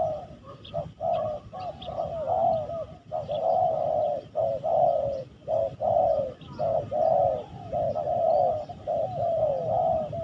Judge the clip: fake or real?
real